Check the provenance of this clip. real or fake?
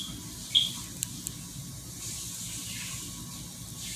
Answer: real